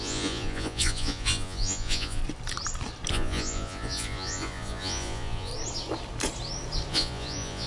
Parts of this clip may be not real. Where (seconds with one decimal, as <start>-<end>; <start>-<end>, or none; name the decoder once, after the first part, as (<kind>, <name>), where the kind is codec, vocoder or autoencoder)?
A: 0.0-2.2 (vocoder, Vocos); 3.1-5.5; 6.9-7.7